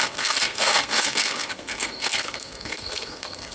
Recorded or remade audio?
remade